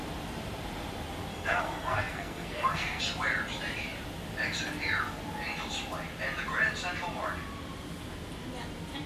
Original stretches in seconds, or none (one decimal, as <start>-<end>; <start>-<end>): 0.0-1.3; 3.0-9.1